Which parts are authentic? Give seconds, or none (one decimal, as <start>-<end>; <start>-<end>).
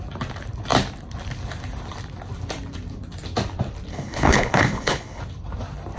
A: 0.0-3.9; 5.2-6.0